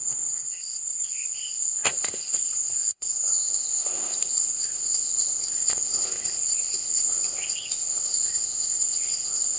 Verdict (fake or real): fake